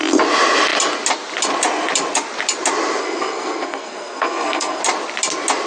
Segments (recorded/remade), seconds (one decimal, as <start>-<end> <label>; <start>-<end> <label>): 0.0-3.0 recorded; 3.0-4.8 remade; 4.8-5.7 recorded

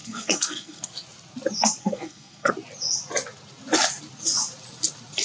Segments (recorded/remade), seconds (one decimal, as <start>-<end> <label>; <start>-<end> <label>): 0.0-0.9 remade; 0.9-1.8 recorded; 1.8-2.5 remade; 2.5-5.2 recorded